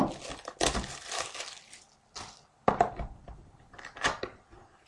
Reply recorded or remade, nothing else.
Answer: recorded